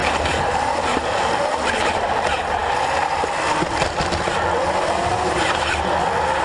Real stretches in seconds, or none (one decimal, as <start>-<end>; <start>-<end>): 2.1-5.1; 5.7-6.4